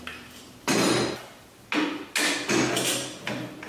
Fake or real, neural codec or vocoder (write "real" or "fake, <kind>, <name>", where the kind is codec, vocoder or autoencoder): real